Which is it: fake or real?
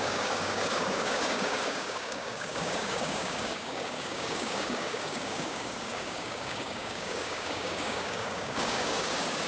fake